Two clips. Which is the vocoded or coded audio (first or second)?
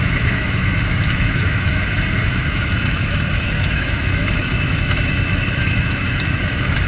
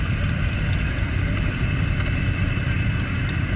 first